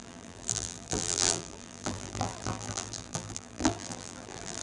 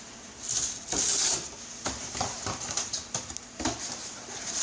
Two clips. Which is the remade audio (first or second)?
first